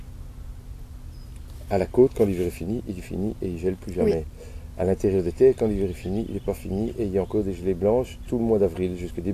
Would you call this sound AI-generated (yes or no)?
no